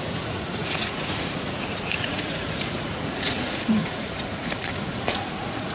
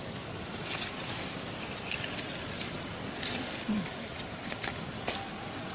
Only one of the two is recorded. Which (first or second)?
second